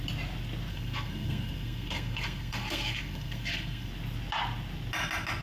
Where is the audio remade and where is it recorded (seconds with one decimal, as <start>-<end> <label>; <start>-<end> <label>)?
0.0-0.7 recorded; 0.7-3.9 remade; 3.9-5.4 recorded